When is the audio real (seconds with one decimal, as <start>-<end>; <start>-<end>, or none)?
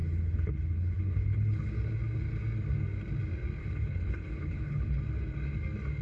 1.7-3.6; 5.0-6.0